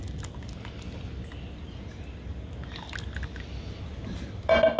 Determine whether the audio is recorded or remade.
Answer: recorded